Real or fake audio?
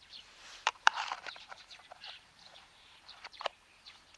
fake